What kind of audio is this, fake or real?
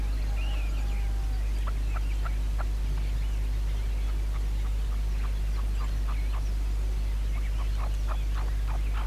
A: real